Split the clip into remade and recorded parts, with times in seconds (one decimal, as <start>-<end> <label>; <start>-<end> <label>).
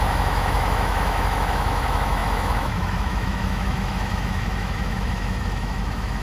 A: 0.0-6.2 remade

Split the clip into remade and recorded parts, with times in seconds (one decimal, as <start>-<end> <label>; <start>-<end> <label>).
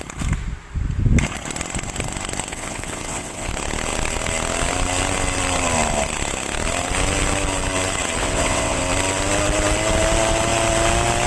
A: 0.0-2.5 recorded; 2.5-3.5 remade; 3.5-8.2 recorded; 8.2-8.8 remade; 8.8-11.3 recorded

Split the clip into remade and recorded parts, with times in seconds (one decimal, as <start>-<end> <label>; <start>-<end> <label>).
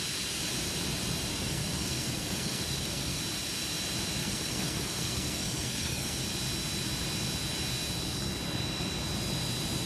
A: 0.0-1.3 recorded; 1.3-3.2 remade; 3.2-4.2 recorded; 4.2-6.2 remade; 6.2-9.9 recorded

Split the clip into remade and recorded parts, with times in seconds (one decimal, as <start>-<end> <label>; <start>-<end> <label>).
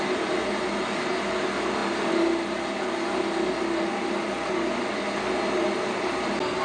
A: 0.0-6.6 recorded